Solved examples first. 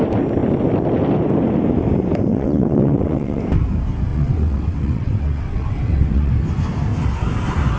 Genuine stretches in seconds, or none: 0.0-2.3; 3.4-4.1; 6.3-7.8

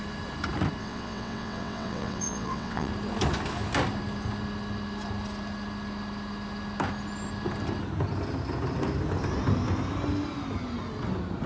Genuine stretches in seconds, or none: 0.0-0.8; 2.9-11.5

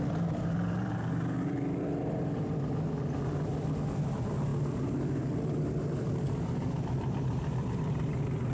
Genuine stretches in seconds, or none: 0.0-8.5